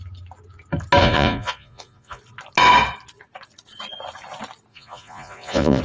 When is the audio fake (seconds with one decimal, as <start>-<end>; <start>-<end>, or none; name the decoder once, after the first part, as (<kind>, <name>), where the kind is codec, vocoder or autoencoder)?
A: 1.0-2.2 (vocoder, Vocos); 4.7-5.8